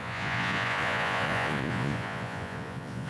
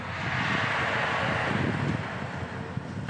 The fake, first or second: first